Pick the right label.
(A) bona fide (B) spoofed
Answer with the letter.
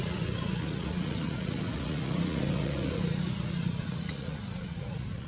B